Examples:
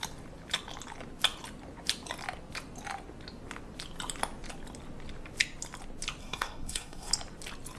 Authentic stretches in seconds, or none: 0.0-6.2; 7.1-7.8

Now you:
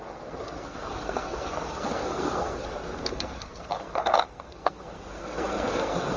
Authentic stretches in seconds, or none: none

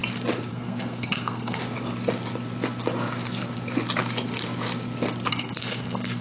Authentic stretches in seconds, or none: 0.0-0.5; 1.6-5.3

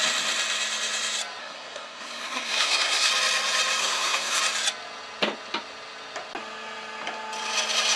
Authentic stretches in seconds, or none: 0.0-1.4; 3.1-3.8; 4.4-8.0

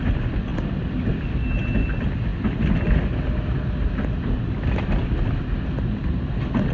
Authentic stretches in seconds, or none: 0.0-6.7

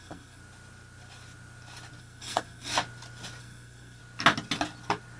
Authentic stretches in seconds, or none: 0.4-2.0; 2.7-3.4; 4.0-5.2

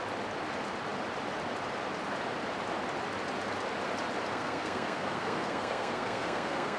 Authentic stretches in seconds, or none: 0.0-4.3

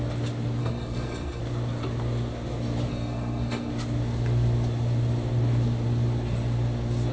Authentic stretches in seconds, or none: 0.0-0.6; 1.4-2.9; 3.7-7.1